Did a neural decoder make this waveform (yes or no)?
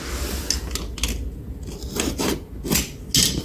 no